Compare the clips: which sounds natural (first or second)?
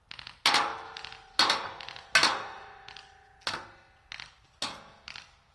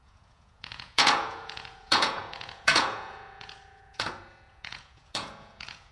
first